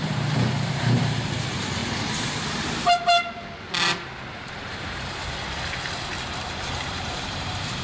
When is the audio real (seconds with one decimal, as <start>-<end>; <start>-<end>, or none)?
1.8-4.5; 5.2-6.8

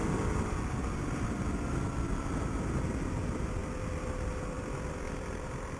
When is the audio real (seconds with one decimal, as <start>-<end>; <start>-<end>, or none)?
0.0-5.8

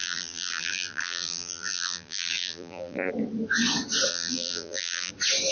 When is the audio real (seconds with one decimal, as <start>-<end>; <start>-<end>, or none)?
3.1-4.1; 5.1-5.5

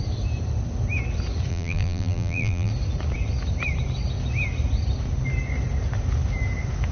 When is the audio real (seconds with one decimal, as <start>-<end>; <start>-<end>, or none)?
0.0-1.5; 2.7-6.9

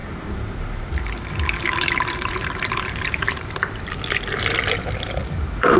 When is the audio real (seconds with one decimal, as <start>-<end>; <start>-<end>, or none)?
3.5-5.2

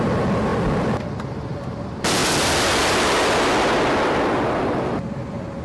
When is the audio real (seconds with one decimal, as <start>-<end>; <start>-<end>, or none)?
0.0-5.6

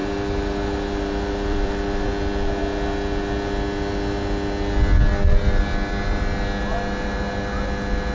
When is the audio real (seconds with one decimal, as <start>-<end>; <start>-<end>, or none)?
2.1-8.1

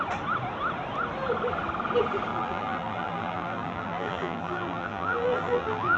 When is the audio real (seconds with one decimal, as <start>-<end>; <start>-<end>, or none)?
0.0-2.3